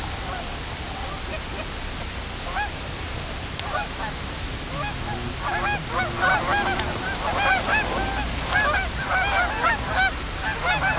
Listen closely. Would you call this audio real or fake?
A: real